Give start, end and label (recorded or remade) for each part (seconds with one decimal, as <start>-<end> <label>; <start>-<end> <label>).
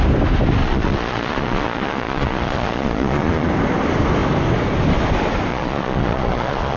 0.0-0.6 recorded; 0.6-3.5 remade; 3.5-5.5 recorded; 5.5-6.8 remade